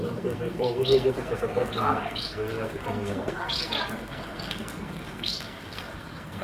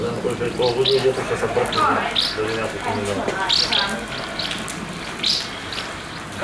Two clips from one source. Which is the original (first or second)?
second